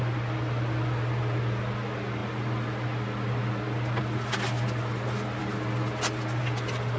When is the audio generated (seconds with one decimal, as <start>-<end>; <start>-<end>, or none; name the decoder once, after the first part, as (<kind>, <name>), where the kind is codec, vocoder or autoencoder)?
none